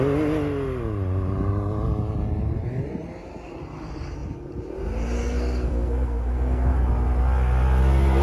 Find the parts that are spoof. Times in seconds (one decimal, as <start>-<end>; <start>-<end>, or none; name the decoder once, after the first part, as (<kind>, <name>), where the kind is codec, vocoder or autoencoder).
5.2-6.9 (codec, SNAC)